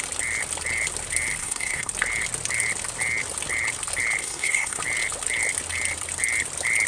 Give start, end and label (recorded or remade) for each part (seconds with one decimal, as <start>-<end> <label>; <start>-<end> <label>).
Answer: 0.0-1.4 recorded; 1.4-1.9 remade; 1.9-4.2 recorded; 4.2-4.8 remade; 4.8-6.9 recorded